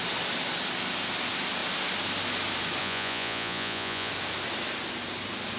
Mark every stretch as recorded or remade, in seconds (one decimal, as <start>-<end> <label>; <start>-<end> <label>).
0.0-2.8 recorded; 2.8-4.1 remade; 4.1-5.6 recorded